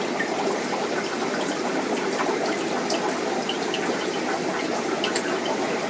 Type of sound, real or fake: real